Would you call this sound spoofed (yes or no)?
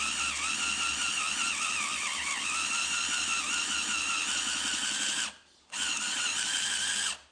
no